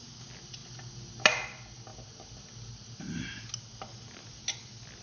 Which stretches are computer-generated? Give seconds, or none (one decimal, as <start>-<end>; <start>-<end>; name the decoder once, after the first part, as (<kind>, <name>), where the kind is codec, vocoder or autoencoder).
none